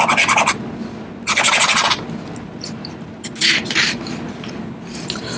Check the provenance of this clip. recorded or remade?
recorded